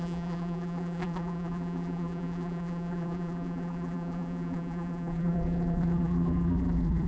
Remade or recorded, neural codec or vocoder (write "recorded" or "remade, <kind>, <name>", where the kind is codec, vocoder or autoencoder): remade, vocoder, BigVGAN v2